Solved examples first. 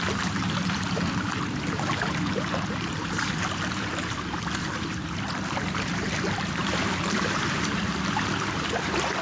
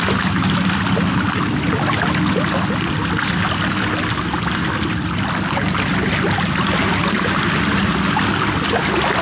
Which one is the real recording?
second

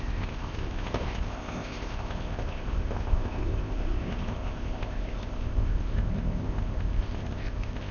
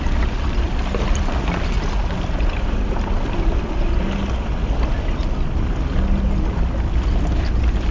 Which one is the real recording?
second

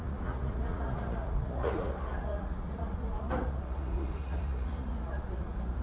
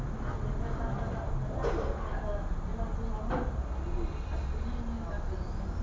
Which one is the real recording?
second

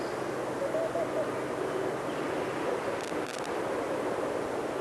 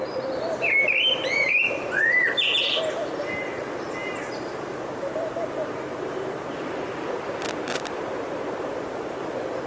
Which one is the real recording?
first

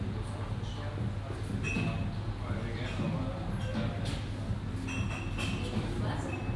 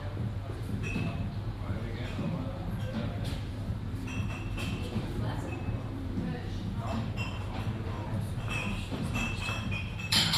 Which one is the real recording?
first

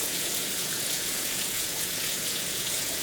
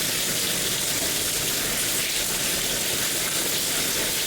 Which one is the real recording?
second